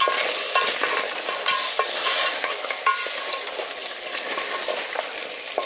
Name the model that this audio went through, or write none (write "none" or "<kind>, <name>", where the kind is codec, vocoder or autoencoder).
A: none